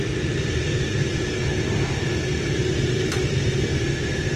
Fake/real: real